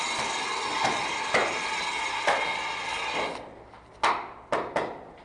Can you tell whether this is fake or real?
real